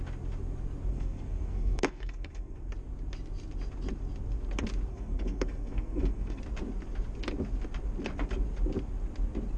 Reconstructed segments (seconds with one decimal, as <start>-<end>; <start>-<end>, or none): 0.9-2.7; 4.9-6.4